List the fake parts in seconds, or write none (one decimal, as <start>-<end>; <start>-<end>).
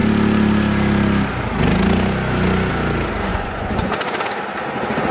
3.3-3.9